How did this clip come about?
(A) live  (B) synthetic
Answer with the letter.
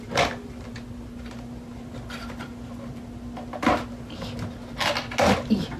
A